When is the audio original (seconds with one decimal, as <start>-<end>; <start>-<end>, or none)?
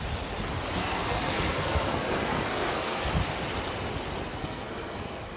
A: 0.0-0.8; 3.1-4.3